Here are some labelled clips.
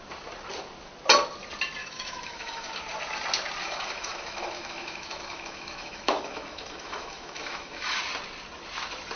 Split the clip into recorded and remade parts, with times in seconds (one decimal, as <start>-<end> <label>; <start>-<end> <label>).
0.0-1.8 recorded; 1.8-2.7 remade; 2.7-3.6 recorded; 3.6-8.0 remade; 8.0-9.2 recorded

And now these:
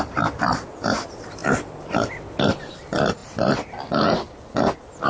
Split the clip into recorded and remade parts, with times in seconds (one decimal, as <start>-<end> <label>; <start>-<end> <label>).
0.0-5.1 recorded

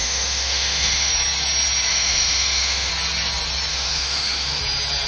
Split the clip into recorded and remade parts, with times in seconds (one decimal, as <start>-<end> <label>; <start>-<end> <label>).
0.0-1.1 remade; 1.1-1.9 recorded; 1.9-2.9 remade; 2.9-3.7 recorded; 3.7-4.6 remade; 4.6-5.1 recorded